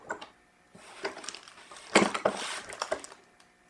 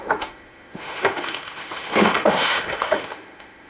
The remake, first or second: second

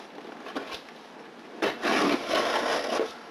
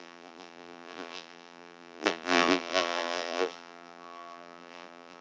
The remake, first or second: second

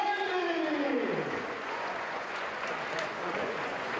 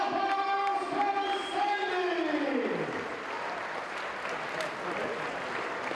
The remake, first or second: first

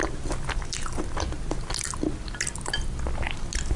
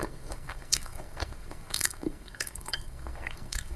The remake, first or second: second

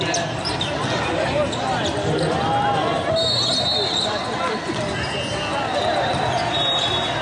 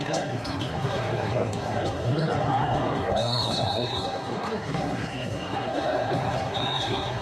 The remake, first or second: second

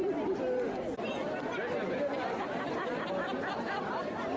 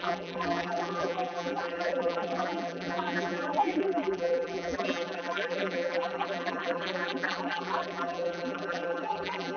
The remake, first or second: second